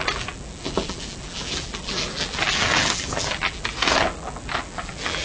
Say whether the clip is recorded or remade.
remade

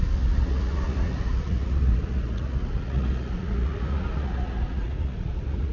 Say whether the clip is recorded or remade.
remade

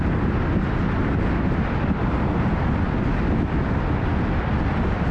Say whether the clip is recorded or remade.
recorded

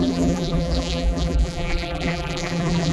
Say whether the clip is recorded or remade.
remade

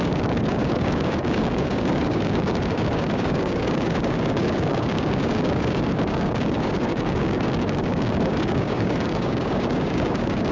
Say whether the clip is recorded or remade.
remade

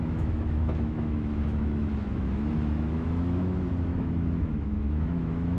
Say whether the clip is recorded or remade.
remade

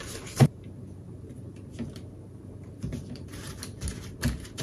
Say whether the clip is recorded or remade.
remade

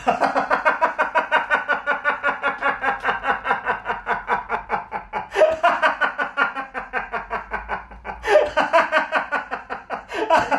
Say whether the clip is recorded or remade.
recorded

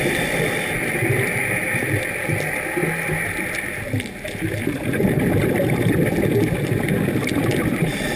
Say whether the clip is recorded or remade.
recorded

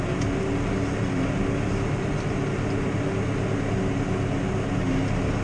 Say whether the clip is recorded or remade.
recorded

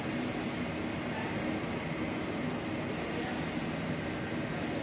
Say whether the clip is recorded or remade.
recorded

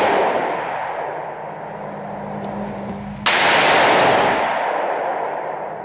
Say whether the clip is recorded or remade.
recorded